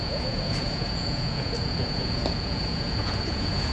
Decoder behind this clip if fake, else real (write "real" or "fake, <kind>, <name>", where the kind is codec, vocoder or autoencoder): fake, vocoder, Vocos